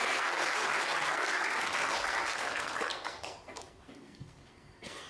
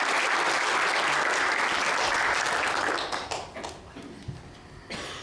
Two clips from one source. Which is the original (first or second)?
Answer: second